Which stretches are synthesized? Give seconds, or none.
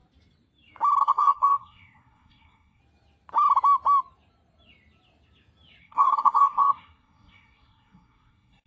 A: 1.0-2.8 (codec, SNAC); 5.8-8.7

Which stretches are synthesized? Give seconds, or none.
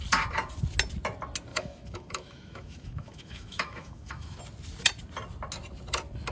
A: 1.5-4.4 (autoencoder, DAC-VAE)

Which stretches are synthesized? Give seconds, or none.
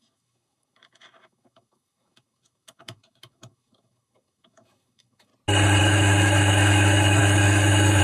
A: 0.0-5.3 (autoencoder, DAC-VAE); 5.8-8.0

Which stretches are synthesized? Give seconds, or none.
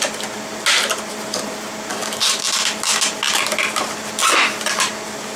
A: 1.9-2.4 (codec, DAC)